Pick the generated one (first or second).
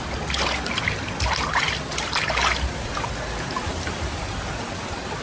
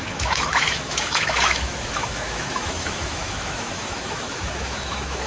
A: second